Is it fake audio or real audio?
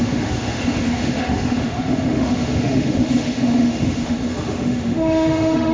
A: fake